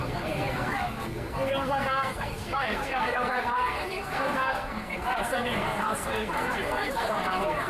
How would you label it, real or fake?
fake